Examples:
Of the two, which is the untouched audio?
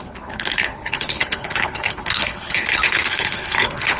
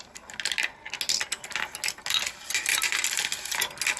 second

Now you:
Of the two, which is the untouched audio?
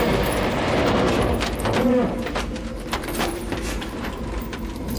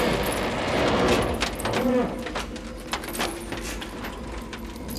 second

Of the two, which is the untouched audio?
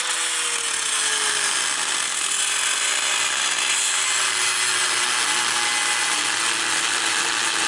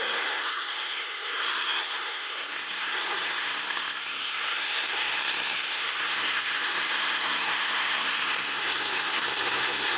first